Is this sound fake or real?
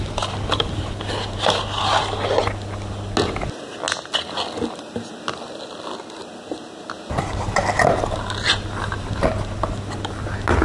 real